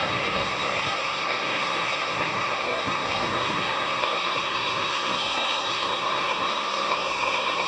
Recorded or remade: remade